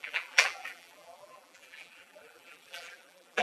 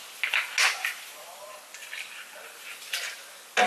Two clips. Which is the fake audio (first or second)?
first